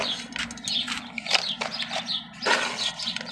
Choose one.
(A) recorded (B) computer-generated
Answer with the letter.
A